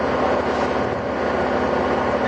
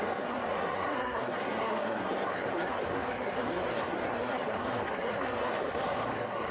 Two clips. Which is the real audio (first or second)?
first